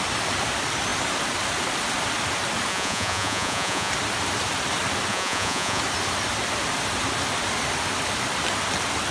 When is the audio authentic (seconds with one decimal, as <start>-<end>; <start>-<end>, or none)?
0.0-2.7; 3.9-5.1; 5.8-9.1